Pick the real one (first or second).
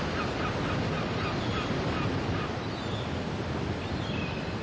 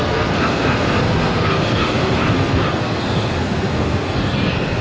first